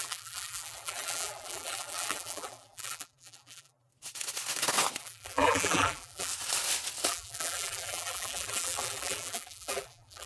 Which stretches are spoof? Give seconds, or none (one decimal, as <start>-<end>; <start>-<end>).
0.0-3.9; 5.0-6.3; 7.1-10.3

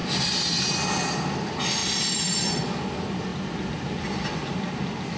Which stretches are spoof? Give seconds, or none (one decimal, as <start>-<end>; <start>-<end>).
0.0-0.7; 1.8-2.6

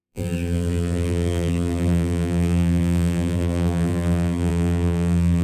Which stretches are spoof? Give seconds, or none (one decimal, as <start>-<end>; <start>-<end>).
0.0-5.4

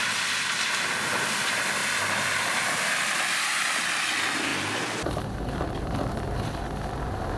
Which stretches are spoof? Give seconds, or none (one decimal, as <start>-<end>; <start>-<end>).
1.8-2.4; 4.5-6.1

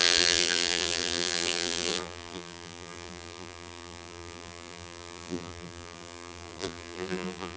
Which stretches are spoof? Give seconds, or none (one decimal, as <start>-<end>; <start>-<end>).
0.0-7.6

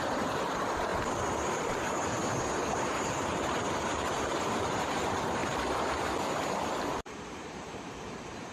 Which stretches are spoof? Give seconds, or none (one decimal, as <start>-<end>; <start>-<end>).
0.0-0.9; 1.6-2.2; 2.8-5.4; 6.8-8.5

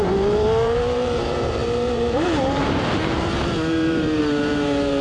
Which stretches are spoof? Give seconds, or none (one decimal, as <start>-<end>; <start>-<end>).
0.0-5.0